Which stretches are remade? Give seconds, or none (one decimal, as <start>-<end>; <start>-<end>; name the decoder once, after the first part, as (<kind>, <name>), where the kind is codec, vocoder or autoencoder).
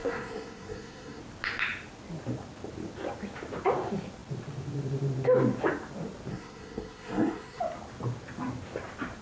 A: 0.0-1.2 (codec, SNAC); 6.3-7.6